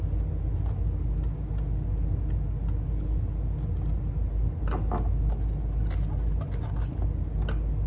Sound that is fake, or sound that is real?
real